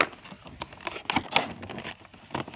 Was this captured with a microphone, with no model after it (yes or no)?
yes